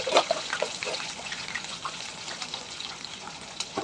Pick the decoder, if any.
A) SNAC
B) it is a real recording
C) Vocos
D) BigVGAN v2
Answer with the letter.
C